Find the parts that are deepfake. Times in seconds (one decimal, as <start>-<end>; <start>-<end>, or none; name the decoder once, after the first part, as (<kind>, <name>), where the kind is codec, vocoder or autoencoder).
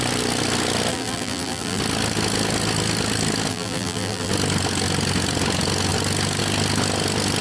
0.9-1.8 (vocoder, BigVGAN v2); 3.5-4.3